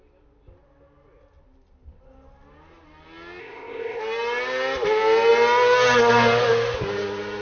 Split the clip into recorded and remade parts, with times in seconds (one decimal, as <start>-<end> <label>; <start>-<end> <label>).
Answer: 0.0-3.4 recorded; 3.4-4.0 remade; 4.0-7.4 recorded